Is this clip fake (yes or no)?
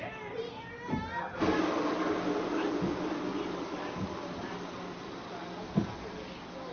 no